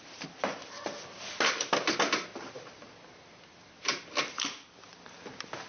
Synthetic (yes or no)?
no